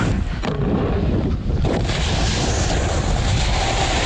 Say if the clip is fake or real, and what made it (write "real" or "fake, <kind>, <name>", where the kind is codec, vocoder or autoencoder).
real